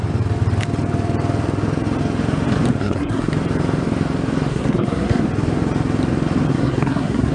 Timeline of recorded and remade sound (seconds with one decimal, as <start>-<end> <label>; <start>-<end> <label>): 0.0-2.8 recorded; 2.8-3.3 remade; 3.3-4.5 recorded; 4.5-5.2 remade; 5.2-6.5 recorded; 6.5-7.3 remade